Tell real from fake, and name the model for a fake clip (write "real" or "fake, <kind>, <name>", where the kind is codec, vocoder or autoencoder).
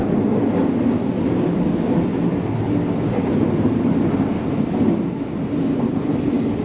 real